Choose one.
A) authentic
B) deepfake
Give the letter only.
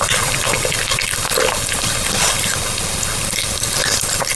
A